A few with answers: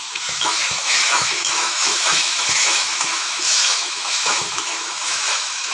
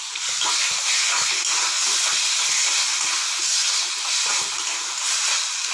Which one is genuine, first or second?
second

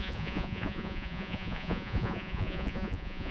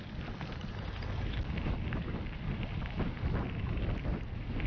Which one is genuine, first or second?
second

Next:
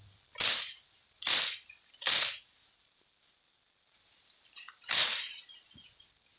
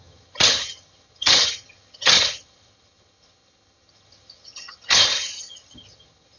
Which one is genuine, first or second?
first